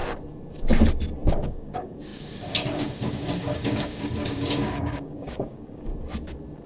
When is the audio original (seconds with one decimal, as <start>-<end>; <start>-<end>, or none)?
0.0-1.3; 5.9-6.7